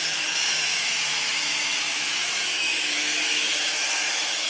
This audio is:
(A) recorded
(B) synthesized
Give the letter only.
B